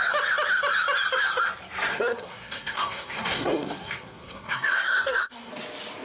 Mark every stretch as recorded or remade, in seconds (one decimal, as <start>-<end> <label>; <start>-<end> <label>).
0.0-1.9 recorded; 1.9-5.5 remade; 5.5-6.0 recorded